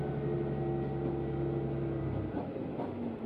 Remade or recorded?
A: recorded